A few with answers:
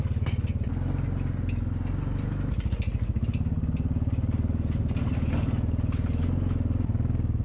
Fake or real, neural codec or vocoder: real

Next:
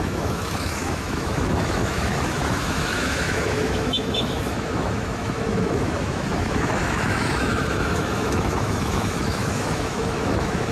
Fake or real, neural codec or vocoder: fake, autoencoder, DAC-VAE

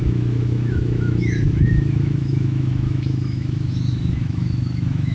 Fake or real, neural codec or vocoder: fake, autoencoder, DAC-VAE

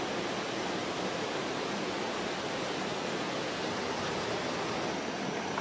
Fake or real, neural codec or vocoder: real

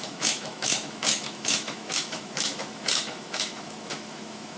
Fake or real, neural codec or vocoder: fake, autoencoder, DAC-VAE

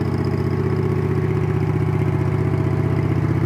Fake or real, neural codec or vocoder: real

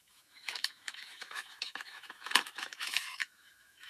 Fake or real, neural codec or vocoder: fake, autoencoder, DAC-VAE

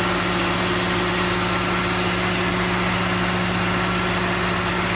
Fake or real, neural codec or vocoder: real